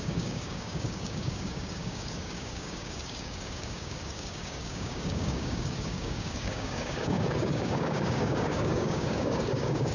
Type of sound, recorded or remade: remade